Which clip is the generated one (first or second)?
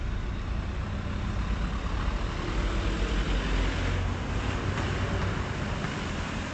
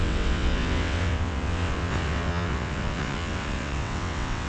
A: second